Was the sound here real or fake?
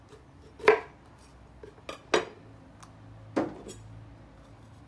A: real